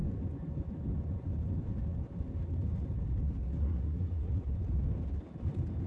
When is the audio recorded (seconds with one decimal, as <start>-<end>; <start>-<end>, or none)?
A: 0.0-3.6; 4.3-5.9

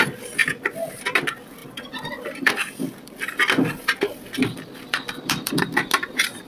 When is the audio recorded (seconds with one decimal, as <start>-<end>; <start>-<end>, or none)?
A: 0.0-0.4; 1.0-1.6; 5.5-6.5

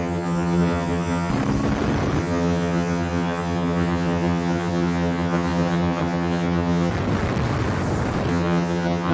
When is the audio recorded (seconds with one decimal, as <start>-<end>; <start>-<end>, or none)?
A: 1.3-2.2; 6.9-8.3

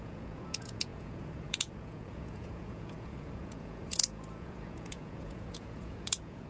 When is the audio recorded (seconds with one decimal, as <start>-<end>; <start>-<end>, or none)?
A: none

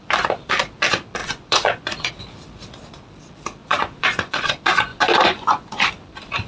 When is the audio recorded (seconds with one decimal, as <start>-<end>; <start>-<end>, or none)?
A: 0.0-1.2; 2.1-3.6; 4.5-4.9; 5.9-6.5

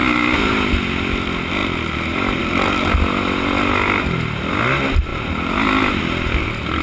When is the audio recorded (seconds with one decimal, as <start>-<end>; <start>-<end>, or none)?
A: 0.8-1.6; 2.4-5.1; 6.0-6.8

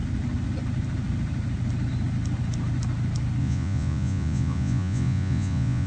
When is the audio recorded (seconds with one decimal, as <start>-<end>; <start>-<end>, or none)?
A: 0.0-3.4